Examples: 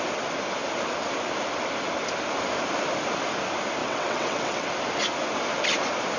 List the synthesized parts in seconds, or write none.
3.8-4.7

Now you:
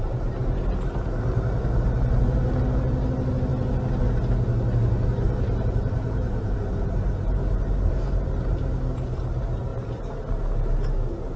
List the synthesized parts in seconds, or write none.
none

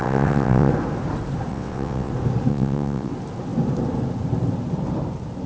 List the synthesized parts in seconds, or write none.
0.0-0.7; 1.5-2.1; 2.5-3.1

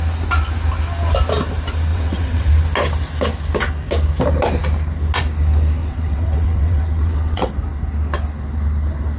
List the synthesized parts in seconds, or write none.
1.9-2.5; 5.8-7.5

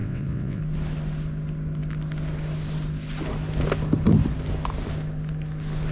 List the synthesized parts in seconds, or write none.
0.0-0.6

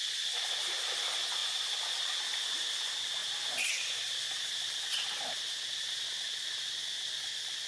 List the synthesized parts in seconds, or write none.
none